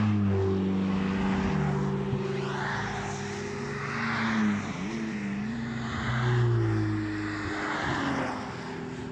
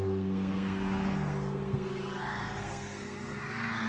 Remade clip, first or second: second